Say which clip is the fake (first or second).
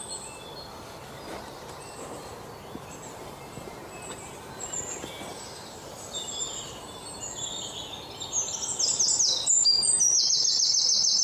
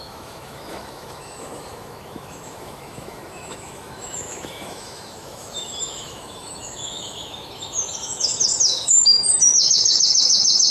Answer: second